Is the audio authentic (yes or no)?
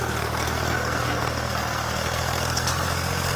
no